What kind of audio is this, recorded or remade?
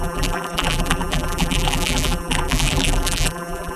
remade